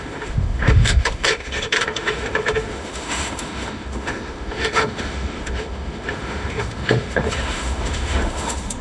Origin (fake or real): fake